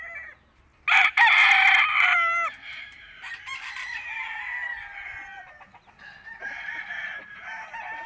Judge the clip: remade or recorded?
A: recorded